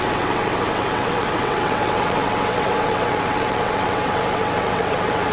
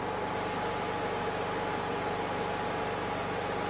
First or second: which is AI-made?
first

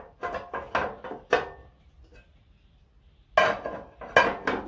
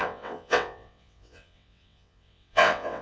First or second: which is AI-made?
second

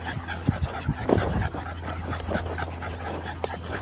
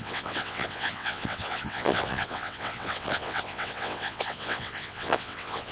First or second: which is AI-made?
second